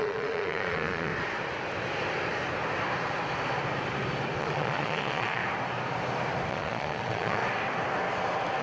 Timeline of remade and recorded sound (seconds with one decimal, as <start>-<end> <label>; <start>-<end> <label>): 0.0-1.1 remade; 1.1-4.4 recorded; 4.4-5.4 remade; 5.4-6.5 recorded; 6.5-7.4 remade; 7.4-8.6 recorded